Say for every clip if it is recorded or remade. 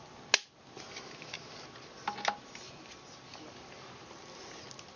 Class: recorded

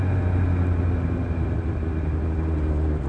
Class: recorded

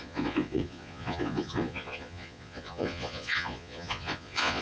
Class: remade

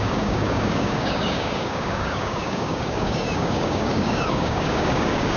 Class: remade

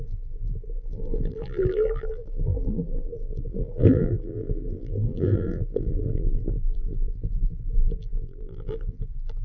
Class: remade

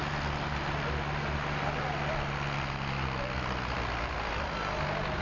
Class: recorded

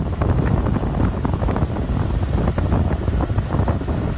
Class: recorded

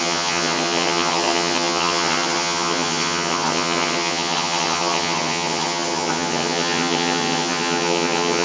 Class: remade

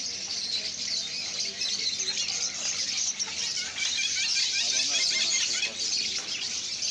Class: recorded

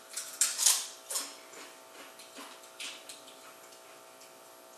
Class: recorded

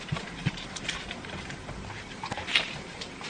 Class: remade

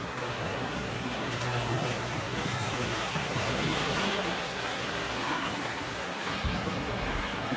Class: remade